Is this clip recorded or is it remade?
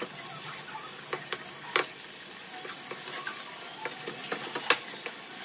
recorded